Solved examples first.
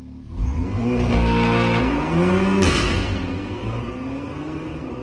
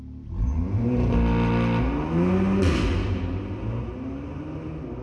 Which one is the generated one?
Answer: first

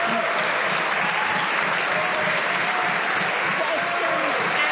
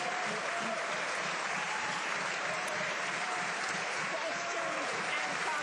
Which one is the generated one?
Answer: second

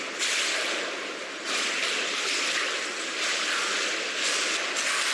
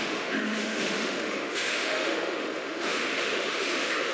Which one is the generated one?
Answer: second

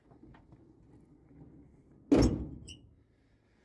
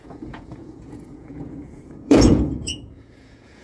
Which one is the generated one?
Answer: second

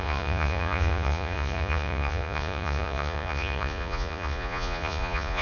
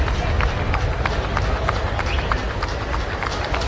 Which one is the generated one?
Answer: first